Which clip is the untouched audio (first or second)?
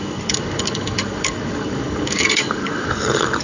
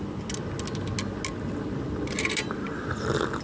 second